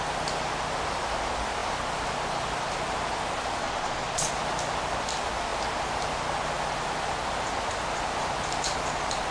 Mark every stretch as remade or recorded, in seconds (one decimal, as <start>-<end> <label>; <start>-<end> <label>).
0.0-3.6 recorded; 3.6-4.3 remade; 4.3-9.3 recorded